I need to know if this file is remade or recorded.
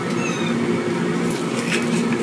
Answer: recorded